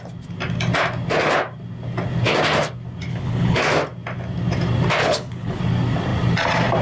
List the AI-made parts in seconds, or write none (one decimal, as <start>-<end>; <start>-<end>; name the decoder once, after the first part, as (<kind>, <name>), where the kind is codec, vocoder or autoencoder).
3.1-3.6 (codec, HILCodec); 5.0-5.6